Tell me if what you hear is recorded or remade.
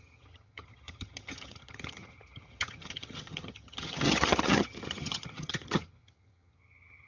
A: remade